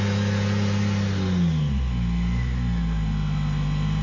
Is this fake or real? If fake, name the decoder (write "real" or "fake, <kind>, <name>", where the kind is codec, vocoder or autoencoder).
real